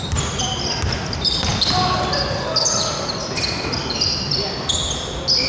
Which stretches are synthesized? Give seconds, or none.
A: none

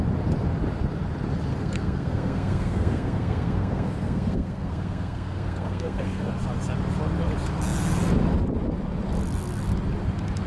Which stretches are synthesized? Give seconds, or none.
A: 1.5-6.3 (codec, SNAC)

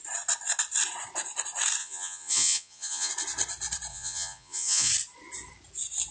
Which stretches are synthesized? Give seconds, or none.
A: 1.8-3.1 (vocoder, Vocos); 3.9-4.9